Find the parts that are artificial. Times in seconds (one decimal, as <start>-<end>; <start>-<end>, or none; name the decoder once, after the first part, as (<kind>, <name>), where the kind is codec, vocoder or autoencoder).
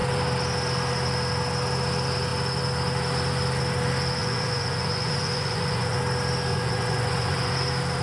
4.2-6.0 (vocoder, Vocos); 6.5-7.5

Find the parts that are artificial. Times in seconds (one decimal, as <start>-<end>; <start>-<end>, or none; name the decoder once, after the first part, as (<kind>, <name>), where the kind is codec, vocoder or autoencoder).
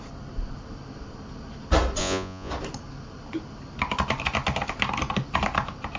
2.0-2.5 (vocoder, Vocos)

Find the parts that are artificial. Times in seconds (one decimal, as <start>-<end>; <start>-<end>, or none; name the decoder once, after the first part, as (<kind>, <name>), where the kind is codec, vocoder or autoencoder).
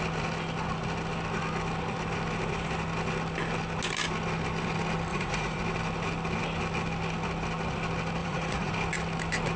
5.1-5.6 (vocoder, Vocos); 8.2-8.7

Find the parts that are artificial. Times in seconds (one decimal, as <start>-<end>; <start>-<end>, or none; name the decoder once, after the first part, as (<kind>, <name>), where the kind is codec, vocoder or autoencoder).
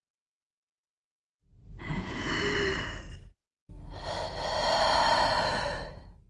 1.5-2.3 (vocoder, Vocos)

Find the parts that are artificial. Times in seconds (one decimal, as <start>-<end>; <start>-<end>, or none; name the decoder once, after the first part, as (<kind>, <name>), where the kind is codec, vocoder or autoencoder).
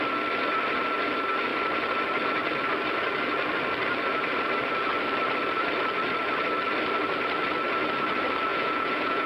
8.5-9.3 (vocoder, Vocos)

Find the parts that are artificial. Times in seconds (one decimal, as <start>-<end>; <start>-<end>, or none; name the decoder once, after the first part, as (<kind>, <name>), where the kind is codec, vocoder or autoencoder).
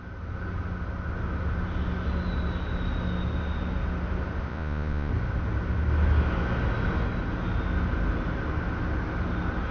4.5-5.1 (vocoder, Vocos)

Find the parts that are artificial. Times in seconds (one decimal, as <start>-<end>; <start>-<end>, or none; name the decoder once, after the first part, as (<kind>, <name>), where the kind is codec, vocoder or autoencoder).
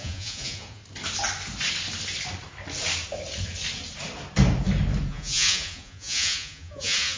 0.0-0.8 (vocoder, Vocos); 5.1-7.2